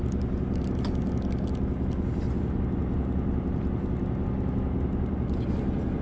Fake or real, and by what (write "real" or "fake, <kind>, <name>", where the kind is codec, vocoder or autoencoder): real